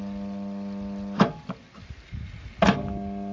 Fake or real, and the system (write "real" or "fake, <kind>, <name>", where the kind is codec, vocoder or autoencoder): real